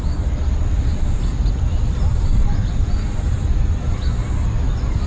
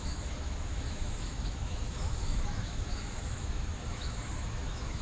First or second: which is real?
first